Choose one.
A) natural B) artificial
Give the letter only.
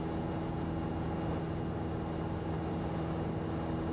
A